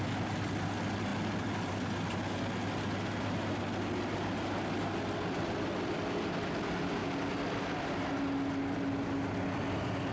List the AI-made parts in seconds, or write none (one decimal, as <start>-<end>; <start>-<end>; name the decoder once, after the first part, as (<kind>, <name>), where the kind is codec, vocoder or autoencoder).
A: none